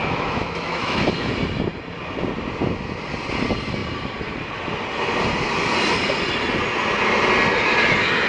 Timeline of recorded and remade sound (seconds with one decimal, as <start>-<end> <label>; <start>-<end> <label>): 0.0-1.3 remade; 1.3-8.3 recorded